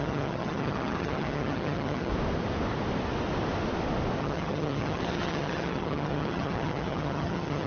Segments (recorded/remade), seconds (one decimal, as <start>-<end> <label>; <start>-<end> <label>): 0.0-2.1 remade; 2.1-4.2 recorded; 4.2-7.7 remade